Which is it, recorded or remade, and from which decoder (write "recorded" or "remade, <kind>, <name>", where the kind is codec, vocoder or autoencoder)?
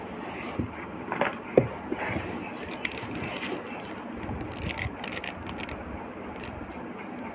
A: recorded